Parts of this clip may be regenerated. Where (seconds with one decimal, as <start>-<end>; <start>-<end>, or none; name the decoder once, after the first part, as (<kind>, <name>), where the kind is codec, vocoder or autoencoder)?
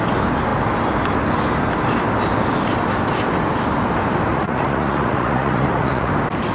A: 4.3-6.1 (vocoder, Vocos)